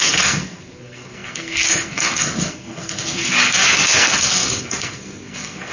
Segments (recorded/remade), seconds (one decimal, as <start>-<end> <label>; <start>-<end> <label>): 0.0-5.7 remade